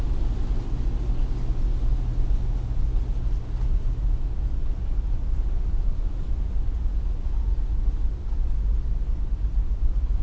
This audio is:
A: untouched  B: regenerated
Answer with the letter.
A